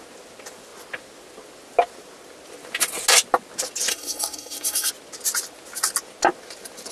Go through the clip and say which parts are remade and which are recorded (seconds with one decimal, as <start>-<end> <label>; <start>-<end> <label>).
0.0-3.9 recorded; 3.9-4.9 remade; 4.9-6.9 recorded